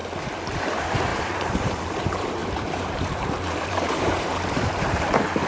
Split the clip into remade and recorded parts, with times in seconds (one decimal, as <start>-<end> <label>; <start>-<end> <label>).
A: 0.0-0.6 recorded; 0.6-5.5 remade